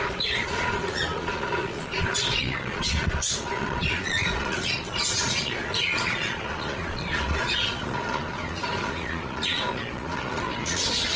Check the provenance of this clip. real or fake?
fake